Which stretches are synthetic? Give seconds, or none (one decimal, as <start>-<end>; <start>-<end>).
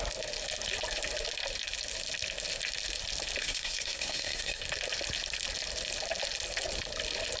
3.4-4.6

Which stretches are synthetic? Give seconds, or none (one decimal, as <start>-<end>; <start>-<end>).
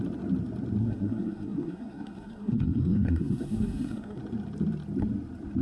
0.8-4.2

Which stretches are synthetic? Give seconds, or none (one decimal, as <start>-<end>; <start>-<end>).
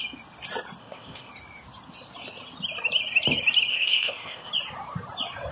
0.8-1.3; 3.7-4.5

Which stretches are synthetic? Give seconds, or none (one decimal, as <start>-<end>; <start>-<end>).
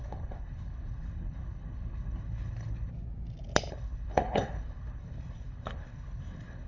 0.0-2.9; 3.7-6.7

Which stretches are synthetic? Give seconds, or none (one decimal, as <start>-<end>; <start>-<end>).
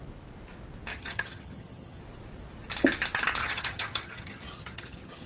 0.9-2.0; 3.4-5.3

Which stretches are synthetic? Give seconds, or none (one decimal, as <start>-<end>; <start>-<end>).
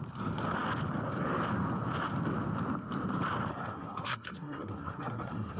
3.5-5.6